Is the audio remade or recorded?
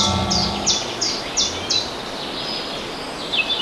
recorded